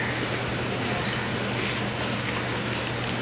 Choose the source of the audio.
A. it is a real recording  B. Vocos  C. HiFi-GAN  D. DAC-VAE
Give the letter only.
A